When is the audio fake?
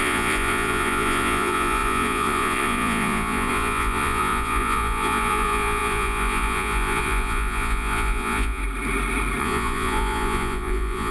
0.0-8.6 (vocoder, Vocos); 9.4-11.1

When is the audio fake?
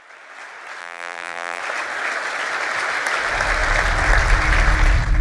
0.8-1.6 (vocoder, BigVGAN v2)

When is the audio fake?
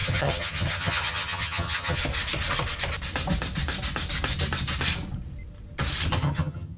0.0-2.0 (vocoder, HiFi-GAN); 6.1-6.8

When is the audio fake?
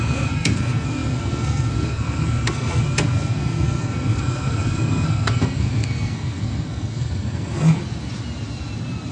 0.0-7.8 (codec, SNAC)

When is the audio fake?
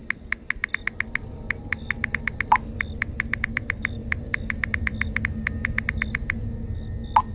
3.0-4.0 (vocoder, BigVGAN v2); 4.5-4.9